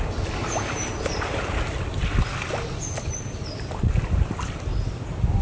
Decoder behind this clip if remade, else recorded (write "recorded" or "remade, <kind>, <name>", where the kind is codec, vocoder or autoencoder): recorded